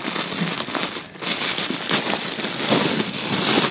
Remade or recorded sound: recorded